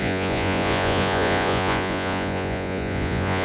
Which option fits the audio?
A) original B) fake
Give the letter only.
B